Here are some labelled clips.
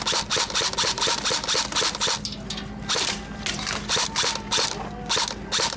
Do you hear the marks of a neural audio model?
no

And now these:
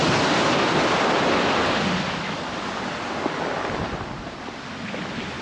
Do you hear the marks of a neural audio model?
no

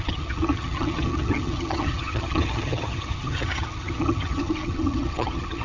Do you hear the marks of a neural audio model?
yes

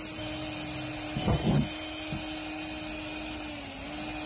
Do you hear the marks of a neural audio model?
no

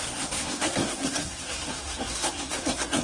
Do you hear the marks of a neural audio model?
yes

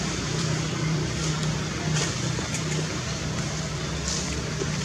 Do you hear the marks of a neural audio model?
yes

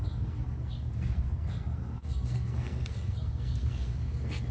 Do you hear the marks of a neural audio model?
yes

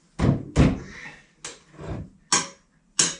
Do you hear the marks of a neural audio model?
no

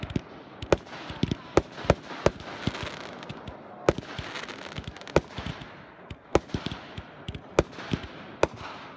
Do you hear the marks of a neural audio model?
no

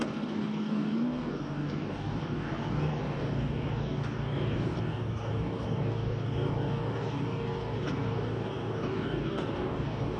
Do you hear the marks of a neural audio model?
yes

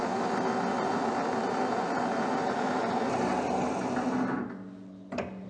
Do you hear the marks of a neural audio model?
no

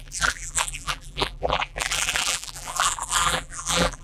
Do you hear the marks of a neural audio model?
yes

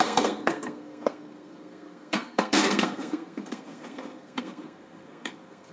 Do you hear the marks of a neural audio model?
yes